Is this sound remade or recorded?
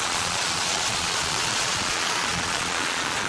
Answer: remade